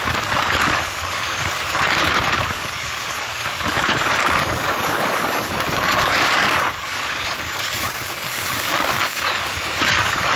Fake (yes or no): yes